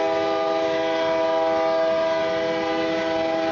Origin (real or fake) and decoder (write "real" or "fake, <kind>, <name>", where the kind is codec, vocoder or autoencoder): real